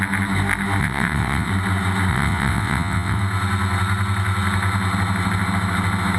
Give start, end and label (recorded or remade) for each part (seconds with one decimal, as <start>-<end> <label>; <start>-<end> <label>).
0.0-0.8 recorded; 0.8-1.5 remade; 1.5-2.1 recorded; 2.1-3.2 remade; 3.2-6.2 recorded